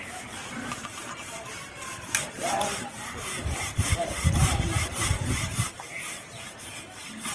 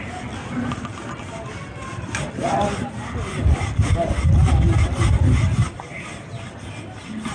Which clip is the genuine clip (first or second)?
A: second